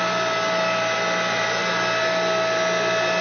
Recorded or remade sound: recorded